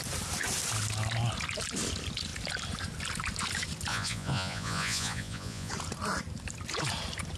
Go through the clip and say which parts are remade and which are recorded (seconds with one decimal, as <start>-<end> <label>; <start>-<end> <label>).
0.0-3.9 recorded; 3.9-5.7 remade; 5.7-7.4 recorded

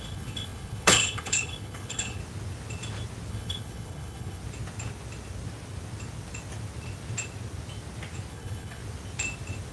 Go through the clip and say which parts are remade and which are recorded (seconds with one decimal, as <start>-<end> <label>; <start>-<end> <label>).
0.0-2.2 remade; 2.2-3.3 recorded; 3.3-4.4 remade; 4.4-8.3 recorded; 8.3-8.8 remade; 8.8-9.7 recorded

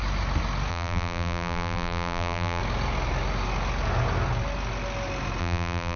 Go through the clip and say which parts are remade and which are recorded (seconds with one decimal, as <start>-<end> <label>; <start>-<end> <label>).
0.0-0.7 recorded; 0.7-2.6 remade; 2.6-5.4 recorded; 5.4-6.0 remade

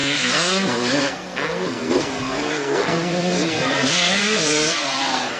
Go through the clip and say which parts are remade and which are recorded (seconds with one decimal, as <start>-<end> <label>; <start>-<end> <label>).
0.0-5.4 remade

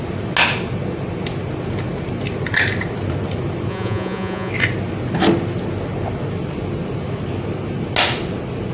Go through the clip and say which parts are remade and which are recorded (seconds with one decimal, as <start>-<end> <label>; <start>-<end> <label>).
0.0-3.7 recorded; 3.7-4.5 remade; 4.5-8.7 recorded

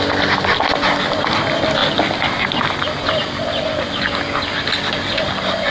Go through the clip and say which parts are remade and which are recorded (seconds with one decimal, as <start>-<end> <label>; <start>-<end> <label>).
0.0-5.7 recorded

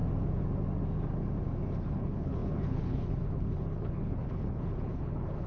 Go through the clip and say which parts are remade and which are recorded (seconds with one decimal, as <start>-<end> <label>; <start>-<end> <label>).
0.0-1.8 recorded; 1.8-5.5 remade

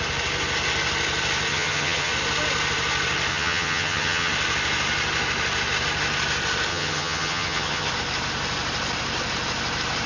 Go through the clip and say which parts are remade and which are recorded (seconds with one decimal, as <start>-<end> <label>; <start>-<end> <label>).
0.0-1.5 recorded; 1.5-2.1 remade; 2.1-3.3 recorded; 3.3-4.3 remade; 4.3-6.7 recorded; 6.7-7.9 remade; 7.9-10.1 recorded